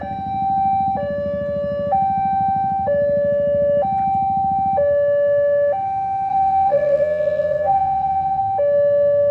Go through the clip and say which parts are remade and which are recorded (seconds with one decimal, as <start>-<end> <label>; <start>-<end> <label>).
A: 0.0-6.3 recorded; 6.3-8.4 remade; 8.4-9.3 recorded